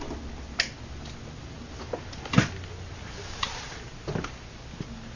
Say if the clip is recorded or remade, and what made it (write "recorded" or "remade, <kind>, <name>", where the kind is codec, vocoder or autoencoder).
recorded